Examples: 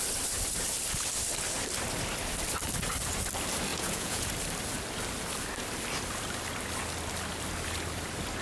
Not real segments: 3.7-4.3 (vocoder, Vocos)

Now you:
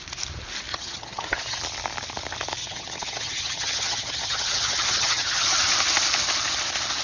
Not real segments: 0.7-1.6 (vocoder, HiFi-GAN); 2.6-5.7